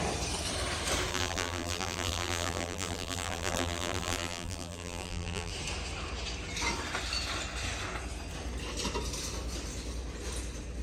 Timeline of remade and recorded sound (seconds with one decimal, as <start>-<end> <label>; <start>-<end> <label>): 0.0-1.1 recorded; 1.1-5.5 remade; 5.5-10.8 recorded